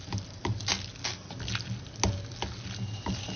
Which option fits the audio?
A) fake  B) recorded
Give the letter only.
B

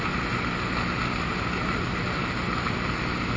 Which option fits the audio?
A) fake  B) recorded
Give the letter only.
B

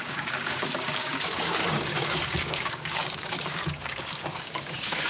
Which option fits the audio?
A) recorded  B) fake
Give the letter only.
B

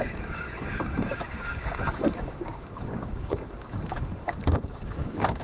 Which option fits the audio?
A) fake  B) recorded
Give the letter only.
A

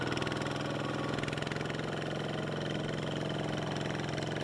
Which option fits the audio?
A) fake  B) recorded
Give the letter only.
B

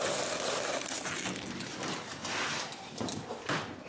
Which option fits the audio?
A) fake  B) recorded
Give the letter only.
B